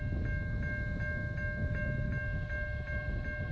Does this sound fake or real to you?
real